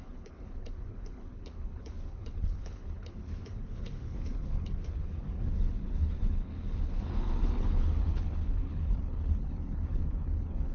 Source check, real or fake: fake